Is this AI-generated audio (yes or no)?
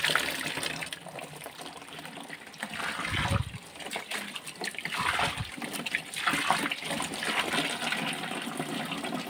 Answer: no